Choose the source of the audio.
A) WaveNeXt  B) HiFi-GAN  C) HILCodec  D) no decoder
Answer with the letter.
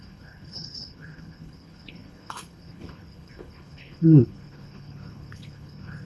C